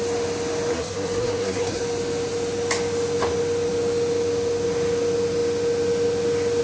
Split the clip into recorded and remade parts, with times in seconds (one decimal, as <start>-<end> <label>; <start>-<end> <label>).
0.0-0.7 recorded; 0.7-1.8 remade; 1.8-6.6 recorded